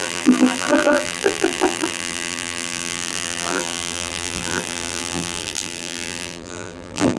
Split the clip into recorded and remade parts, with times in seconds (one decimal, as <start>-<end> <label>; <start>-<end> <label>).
0.0-7.2 remade